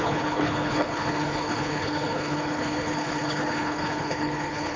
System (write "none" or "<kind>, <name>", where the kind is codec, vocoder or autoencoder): codec, HILCodec